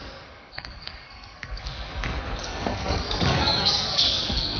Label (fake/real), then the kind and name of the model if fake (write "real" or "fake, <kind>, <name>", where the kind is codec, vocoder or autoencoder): fake, codec, SNAC